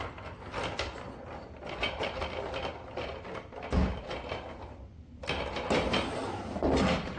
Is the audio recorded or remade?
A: recorded